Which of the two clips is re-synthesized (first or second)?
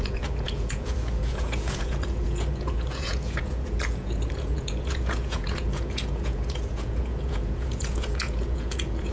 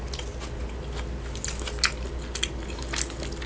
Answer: first